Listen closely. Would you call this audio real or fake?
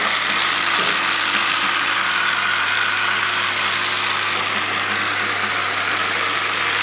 real